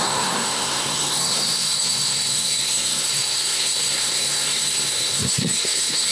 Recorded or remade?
remade